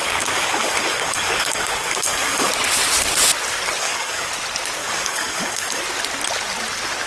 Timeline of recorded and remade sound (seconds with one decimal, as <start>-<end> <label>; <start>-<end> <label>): 0.0-2.5 remade; 2.5-3.8 recorded; 3.8-4.3 remade; 4.3-4.8 recorded; 4.8-5.8 remade; 5.8-7.1 recorded